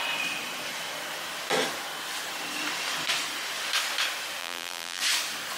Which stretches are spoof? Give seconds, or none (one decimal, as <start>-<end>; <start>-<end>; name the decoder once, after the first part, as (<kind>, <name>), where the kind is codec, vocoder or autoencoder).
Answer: 4.4-5.0 (vocoder, BigVGAN v2)